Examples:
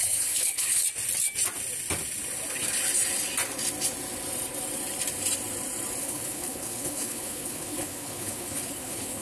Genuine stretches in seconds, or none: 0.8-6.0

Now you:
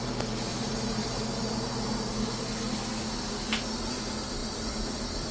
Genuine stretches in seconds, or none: 0.0-0.5; 1.7-4.4

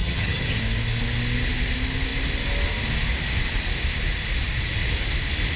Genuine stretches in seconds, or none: 0.6-5.6